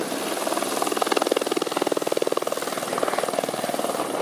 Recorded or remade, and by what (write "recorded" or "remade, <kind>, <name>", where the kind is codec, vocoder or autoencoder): recorded